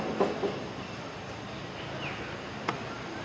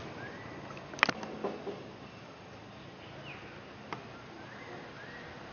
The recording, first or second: second